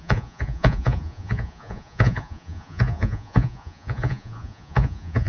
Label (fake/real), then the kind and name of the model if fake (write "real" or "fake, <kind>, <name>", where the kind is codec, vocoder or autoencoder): fake, vocoder, Vocos